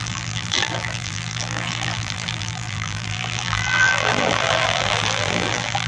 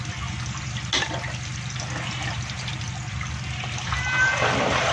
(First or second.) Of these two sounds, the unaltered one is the second